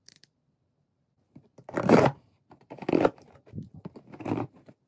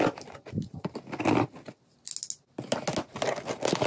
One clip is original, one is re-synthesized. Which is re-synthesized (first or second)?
first